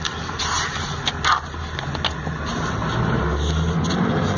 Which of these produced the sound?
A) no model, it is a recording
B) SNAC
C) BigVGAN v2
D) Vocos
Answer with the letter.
A